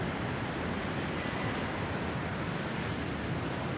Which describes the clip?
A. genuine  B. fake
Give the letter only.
A